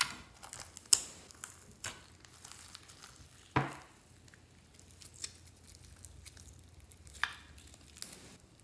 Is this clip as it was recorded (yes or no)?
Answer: yes